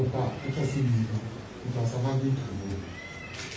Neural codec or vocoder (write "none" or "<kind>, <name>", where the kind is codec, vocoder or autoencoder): none